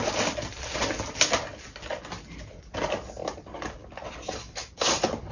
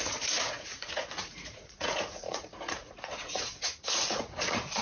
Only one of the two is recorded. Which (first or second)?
first